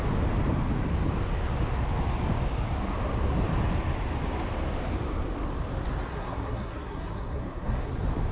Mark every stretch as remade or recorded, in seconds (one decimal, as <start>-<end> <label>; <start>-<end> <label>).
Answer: 0.0-6.1 recorded; 6.1-7.9 remade; 7.9-8.3 recorded